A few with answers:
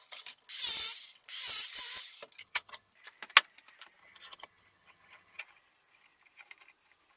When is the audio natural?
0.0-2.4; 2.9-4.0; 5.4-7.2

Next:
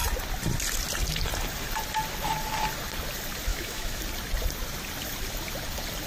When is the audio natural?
0.0-3.5; 4.0-6.1

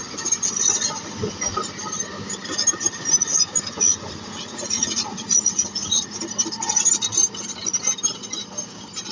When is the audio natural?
0.0-3.2; 6.2-9.1

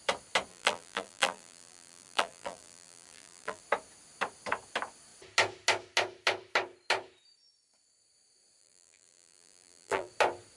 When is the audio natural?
0.0-0.5; 3.6-8.6; 10.1-10.6

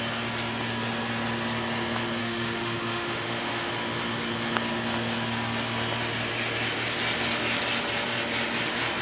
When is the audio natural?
0.0-2.2; 3.7-9.0

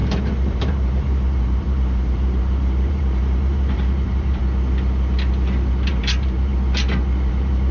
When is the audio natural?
4.4-5.9; 6.5-7.3

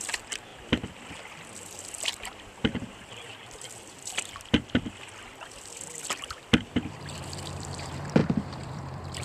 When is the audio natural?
5.3-6.5

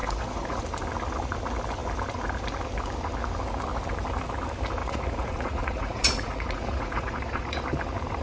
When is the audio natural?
0.6-4.8; 7.6-8.2